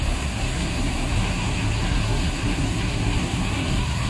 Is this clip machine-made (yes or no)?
yes